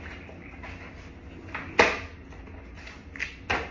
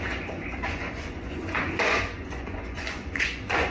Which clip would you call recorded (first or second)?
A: first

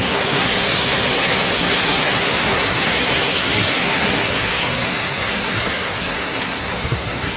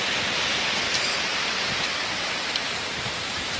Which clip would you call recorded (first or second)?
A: second